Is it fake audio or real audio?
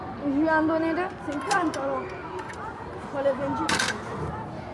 real